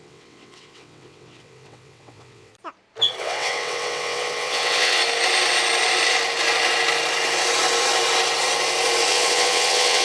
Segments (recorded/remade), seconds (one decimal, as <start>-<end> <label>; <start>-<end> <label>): 0.0-2.5 remade; 2.5-3.2 recorded; 3.2-5.0 remade; 5.0-9.1 recorded; 9.1-10.0 remade